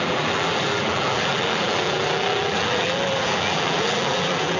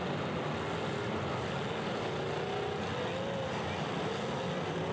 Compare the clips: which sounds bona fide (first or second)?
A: second